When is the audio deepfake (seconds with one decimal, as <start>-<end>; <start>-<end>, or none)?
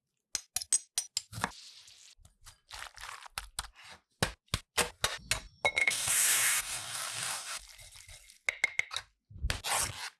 5.8-7.6